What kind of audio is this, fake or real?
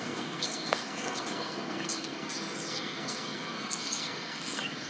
fake